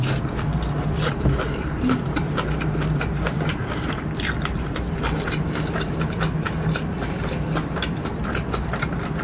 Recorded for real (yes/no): no